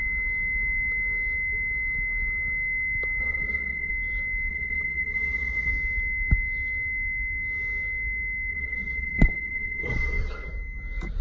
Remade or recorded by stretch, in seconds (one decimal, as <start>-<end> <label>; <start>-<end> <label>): 0.0-3.2 recorded; 3.2-3.9 remade; 3.9-4.5 recorded; 4.5-5.7 remade; 5.7-8.5 recorded; 8.5-10.5 remade; 10.5-11.2 recorded